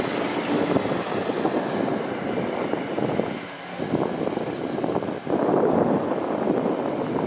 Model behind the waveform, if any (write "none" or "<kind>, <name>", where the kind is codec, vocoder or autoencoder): none